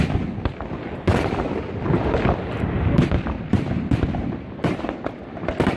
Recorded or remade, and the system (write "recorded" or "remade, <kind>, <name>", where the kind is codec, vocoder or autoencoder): recorded